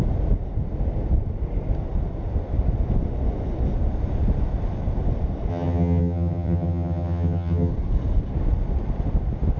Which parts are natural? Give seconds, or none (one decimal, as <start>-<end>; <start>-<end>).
0.0-5.5; 7.7-9.6